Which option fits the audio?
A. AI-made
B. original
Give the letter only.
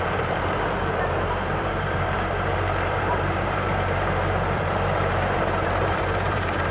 A